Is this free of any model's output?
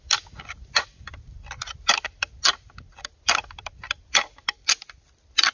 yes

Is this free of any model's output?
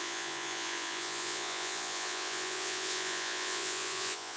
no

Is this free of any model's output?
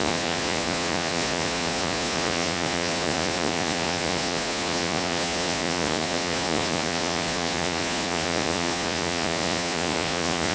no